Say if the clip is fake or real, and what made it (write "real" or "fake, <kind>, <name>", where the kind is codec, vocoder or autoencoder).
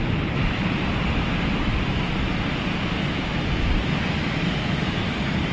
real